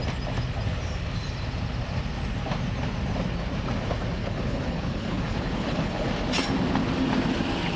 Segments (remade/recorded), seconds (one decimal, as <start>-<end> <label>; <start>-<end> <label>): 0.0-4.2 recorded; 4.2-6.1 remade; 6.1-7.8 recorded

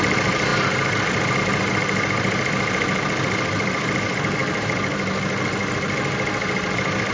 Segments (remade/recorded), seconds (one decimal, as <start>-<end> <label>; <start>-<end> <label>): 0.0-7.1 recorded

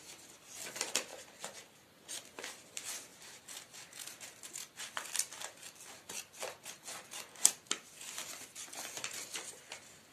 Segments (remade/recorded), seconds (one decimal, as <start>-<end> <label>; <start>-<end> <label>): 0.0-10.1 recorded

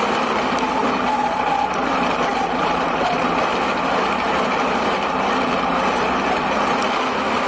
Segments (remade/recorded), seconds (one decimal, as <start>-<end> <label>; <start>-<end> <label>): 0.0-7.5 recorded

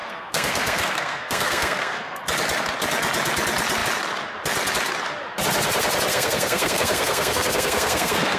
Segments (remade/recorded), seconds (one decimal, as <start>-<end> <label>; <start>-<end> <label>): 0.0-2.2 remade; 2.2-6.1 recorded; 6.1-8.4 remade

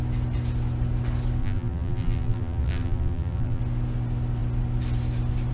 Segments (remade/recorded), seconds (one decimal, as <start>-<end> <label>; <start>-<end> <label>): 0.0-1.4 recorded; 1.4-3.6 remade; 3.6-5.5 recorded